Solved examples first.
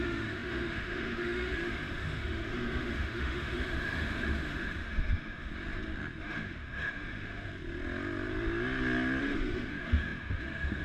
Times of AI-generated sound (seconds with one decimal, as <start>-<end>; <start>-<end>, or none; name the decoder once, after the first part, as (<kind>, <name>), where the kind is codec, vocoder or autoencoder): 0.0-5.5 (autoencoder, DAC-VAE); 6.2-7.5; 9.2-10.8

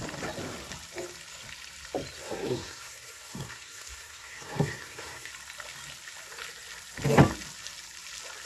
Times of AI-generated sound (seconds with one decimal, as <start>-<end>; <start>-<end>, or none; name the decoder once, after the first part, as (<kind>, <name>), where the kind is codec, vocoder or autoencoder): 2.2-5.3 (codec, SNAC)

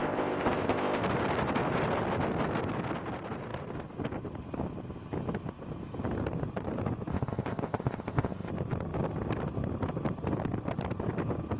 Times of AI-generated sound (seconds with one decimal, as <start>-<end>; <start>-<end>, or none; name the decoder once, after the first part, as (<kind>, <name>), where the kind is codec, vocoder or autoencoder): 0.0-1.0 (codec, ZipCodec); 7.1-8.5

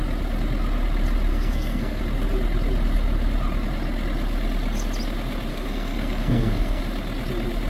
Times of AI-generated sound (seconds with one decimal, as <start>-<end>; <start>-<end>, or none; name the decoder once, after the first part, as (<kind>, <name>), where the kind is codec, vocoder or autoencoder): 1.3-2.0 (codec, SNAC); 5.5-6.8